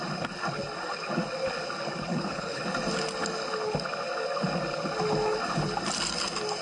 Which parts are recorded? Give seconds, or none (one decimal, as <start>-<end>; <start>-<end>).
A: 0.0-2.1; 2.6-6.6

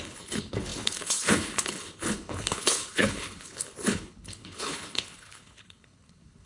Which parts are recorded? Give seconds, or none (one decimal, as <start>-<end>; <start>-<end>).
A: none

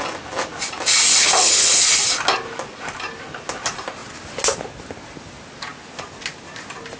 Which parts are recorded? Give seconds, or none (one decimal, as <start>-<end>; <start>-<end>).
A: 0.0-1.2; 1.8-7.0

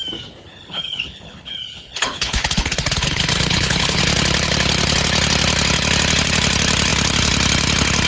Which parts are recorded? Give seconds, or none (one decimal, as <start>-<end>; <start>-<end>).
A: 0.0-0.5; 4.0-8.1

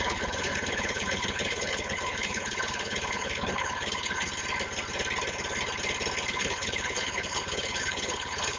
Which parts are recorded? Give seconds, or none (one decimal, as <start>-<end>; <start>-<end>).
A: 4.2-6.3

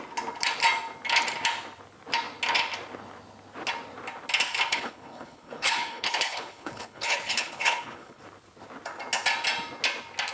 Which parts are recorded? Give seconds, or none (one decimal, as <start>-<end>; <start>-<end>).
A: 0.0-4.7; 8.2-10.3

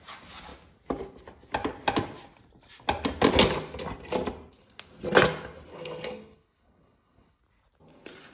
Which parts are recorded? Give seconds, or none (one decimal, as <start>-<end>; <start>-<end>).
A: 0.0-5.7; 7.4-8.3

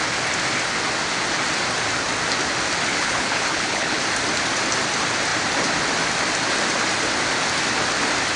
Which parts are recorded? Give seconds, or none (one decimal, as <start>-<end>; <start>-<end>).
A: 0.0-2.9; 4.0-8.4